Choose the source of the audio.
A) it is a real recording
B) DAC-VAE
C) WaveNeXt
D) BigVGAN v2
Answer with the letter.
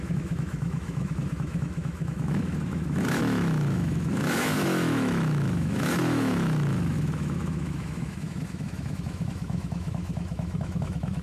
B